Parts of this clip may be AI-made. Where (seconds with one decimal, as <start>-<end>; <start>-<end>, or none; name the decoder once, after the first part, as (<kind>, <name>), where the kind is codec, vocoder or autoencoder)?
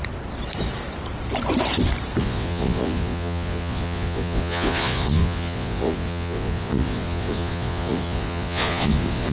2.2-9.3 (vocoder, Vocos)